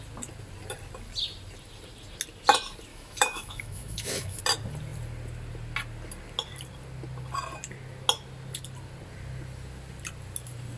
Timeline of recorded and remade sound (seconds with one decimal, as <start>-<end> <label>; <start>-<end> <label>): 0.0-2.9 recorded; 2.9-4.4 remade; 4.4-10.8 recorded